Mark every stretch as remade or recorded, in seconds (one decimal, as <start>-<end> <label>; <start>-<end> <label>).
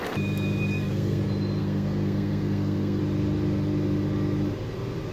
0.0-0.7 recorded; 0.7-1.2 remade; 1.2-1.6 recorded; 1.6-3.0 remade; 3.0-5.1 recorded